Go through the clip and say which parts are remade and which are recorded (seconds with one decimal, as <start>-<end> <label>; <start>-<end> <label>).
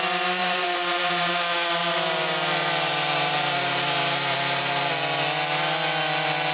0.0-0.4 recorded; 0.4-1.3 remade; 1.3-1.8 recorded; 1.8-4.9 remade; 4.9-6.5 recorded